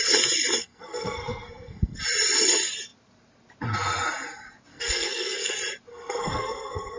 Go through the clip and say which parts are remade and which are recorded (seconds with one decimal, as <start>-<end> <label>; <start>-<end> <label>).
0.0-0.6 recorded; 0.6-2.0 remade; 2.0-4.7 recorded; 4.7-5.5 remade; 5.5-5.9 recorded; 5.9-7.0 remade